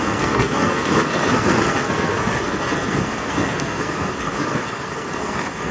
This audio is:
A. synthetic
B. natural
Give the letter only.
A